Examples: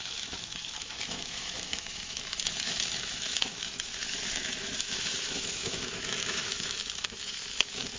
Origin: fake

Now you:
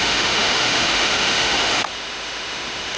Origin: fake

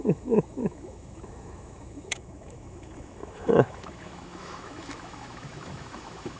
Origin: fake